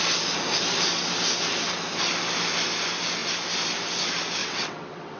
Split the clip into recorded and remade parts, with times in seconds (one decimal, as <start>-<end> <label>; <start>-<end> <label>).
0.0-4.4 recorded; 4.4-5.2 remade